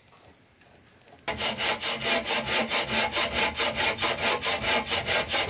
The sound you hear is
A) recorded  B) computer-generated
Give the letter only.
A